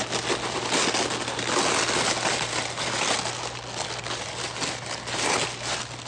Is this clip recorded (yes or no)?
yes